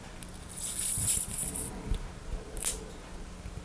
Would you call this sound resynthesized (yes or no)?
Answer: no